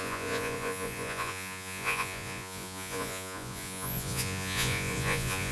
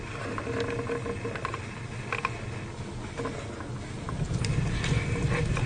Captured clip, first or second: second